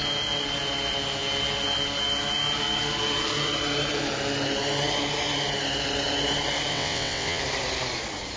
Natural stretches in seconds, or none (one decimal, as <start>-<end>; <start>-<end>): 0.0-6.7; 7.4-8.4